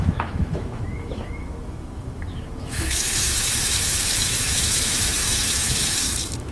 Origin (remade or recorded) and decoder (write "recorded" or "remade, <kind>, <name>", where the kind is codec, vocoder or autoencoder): remade, autoencoder, DAC-VAE